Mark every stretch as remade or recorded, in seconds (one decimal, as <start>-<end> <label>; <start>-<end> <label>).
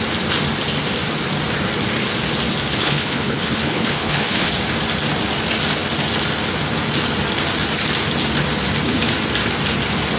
0.0-2.8 recorded; 2.8-4.5 remade; 4.5-10.2 recorded